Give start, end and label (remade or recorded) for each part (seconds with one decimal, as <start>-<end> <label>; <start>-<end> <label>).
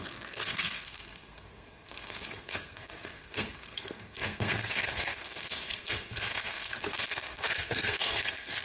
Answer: 0.0-8.6 remade